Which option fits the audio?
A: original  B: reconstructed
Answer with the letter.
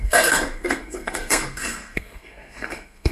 B